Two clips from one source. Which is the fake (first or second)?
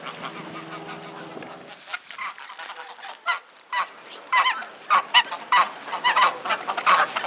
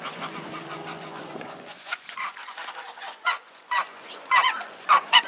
second